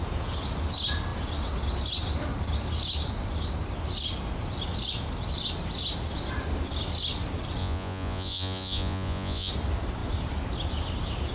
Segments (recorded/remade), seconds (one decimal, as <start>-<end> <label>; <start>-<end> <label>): 0.0-7.6 recorded; 7.6-9.5 remade; 9.5-11.3 recorded